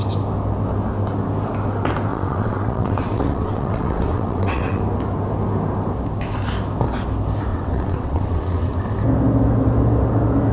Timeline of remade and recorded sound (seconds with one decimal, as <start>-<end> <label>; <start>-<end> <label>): 0.0-2.1 recorded; 2.1-4.8 remade; 4.8-7.5 recorded; 7.5-8.8 remade; 8.8-10.5 recorded